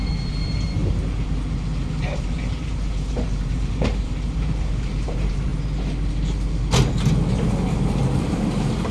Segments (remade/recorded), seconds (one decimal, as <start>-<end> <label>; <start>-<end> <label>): 0.0-0.8 remade; 0.8-1.9 recorded; 1.9-5.5 remade; 5.5-8.0 recorded; 8.0-8.9 remade